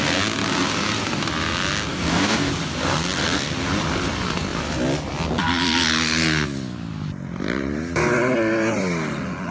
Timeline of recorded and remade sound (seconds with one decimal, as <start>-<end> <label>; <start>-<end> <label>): 0.0-1.9 recorded; 1.9-2.5 remade; 2.5-9.5 recorded